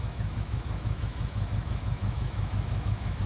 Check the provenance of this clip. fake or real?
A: fake